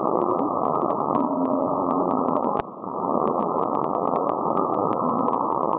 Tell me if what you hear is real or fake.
fake